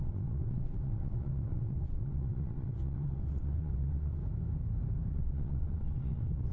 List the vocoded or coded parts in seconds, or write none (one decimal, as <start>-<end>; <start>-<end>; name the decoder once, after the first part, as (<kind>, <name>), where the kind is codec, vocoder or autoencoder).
0.0-4.2 (vocoder, WaveNeXt); 5.1-6.5